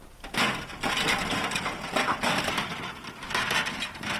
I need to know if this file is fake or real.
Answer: real